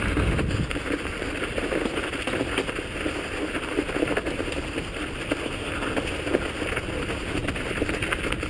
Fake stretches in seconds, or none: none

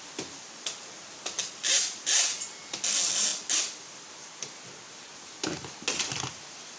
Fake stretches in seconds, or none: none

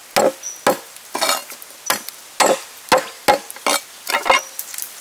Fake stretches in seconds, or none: none

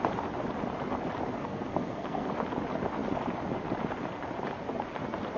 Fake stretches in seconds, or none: 1.4-2.3 (codec, SNAC)